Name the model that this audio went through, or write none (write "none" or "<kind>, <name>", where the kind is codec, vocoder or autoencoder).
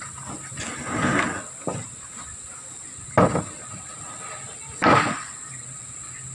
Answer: none